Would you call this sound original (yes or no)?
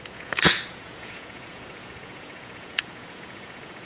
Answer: no